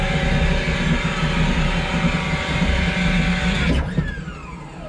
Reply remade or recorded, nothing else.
recorded